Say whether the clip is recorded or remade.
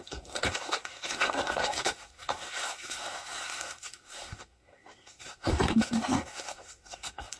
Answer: remade